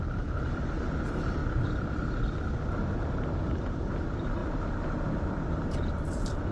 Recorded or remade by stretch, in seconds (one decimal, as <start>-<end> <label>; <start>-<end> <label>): 0.0-1.4 remade; 1.4-3.4 recorded; 3.4-4.4 remade; 4.4-5.5 recorded; 5.5-6.5 remade

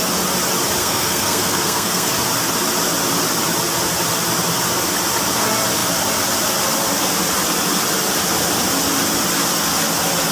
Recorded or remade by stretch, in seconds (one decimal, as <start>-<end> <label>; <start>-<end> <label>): 0.0-0.8 recorded; 0.8-2.1 remade; 2.1-10.3 recorded

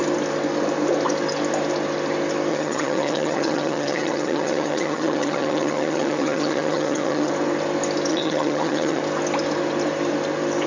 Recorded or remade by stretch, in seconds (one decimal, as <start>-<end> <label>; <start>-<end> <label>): 0.0-2.5 recorded; 2.5-7.3 remade; 7.3-8.1 recorded; 8.1-9.0 remade; 9.0-10.7 recorded

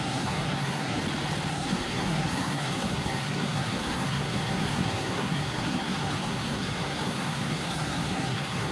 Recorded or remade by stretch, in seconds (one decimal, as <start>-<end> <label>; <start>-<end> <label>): 0.0-1.0 remade; 1.0-1.5 recorded; 1.5-8.7 remade

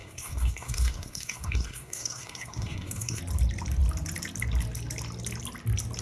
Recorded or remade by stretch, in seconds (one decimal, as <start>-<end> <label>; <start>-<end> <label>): 0.0-3.2 remade; 3.2-6.0 recorded